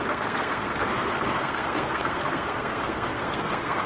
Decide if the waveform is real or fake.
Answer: fake